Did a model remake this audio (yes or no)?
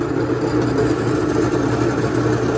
no